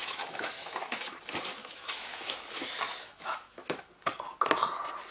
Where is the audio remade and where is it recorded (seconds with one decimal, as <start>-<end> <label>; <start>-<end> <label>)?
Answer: 0.0-1.2 remade; 1.2-1.6 recorded; 1.6-3.9 remade; 3.9-5.1 recorded